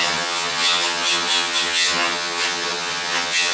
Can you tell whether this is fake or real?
fake